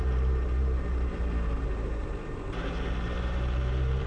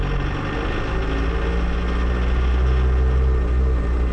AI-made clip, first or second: first